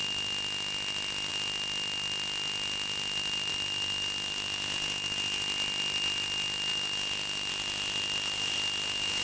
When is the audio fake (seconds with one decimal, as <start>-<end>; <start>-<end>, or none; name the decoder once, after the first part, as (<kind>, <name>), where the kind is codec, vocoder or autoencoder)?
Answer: none